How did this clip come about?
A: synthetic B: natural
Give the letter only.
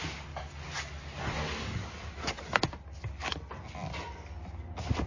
B